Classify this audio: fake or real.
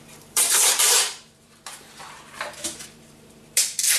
fake